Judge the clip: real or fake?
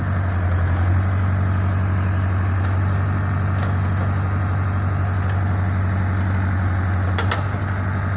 real